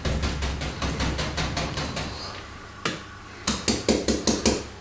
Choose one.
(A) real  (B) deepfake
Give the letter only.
A